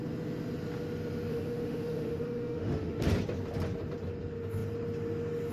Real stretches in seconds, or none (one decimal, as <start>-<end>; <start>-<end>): 0.0-1.3; 3.0-5.5